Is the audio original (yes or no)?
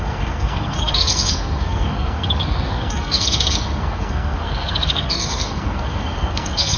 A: no